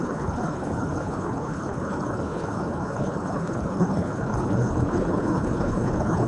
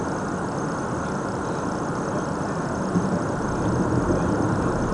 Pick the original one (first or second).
second